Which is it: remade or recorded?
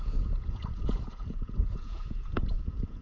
remade